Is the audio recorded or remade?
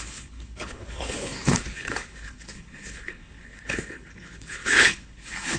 remade